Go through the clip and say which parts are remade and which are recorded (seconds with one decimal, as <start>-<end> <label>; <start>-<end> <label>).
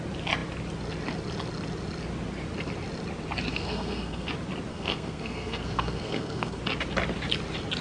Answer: 0.0-3.5 recorded; 3.5-4.3 remade; 4.3-4.7 recorded; 4.7-6.6 remade; 6.6-7.8 recorded